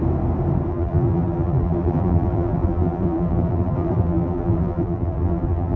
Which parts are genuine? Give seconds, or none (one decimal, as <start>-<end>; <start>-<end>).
0.0-0.7